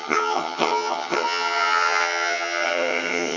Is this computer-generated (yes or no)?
yes